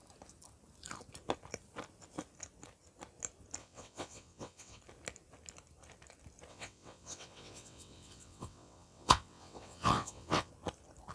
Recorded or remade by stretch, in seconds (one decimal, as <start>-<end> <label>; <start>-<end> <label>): 0.0-3.6 recorded; 3.6-4.8 remade; 4.8-6.5 recorded; 6.5-10.5 remade; 10.5-11.1 recorded